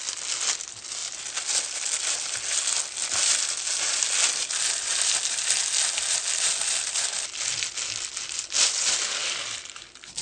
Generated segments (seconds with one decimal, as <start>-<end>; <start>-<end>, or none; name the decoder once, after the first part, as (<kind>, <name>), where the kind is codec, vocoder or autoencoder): 4.4-4.9 (vocoder, BigVGAN v2)